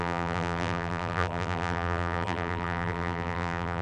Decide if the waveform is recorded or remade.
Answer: remade